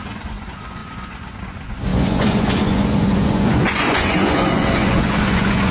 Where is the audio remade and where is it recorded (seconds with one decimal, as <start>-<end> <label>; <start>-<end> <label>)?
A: 0.0-5.7 remade